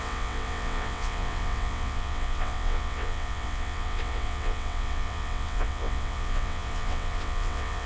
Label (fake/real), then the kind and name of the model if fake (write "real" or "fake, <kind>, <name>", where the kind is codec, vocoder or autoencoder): fake, vocoder, WaveNeXt